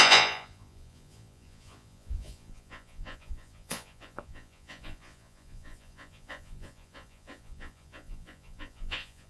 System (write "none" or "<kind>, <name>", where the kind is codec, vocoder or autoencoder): vocoder, Vocos